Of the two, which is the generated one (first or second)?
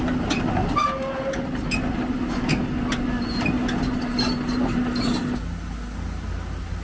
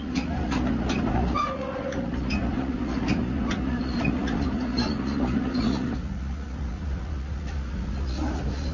second